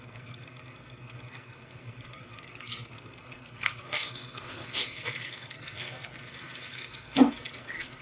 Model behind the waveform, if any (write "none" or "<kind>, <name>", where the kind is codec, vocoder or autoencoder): codec, SNAC